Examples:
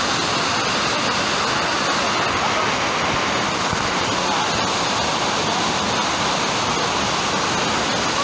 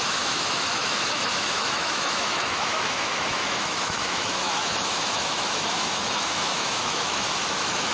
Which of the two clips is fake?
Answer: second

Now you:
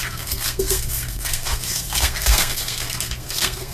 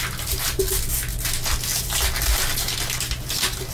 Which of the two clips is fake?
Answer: first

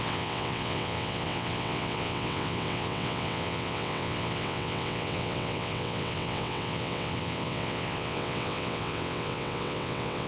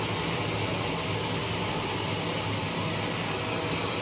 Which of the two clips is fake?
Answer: first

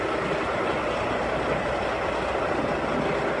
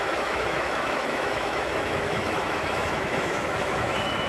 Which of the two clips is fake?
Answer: second